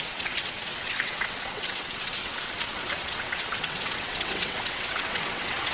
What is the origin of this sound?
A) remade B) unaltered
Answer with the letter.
A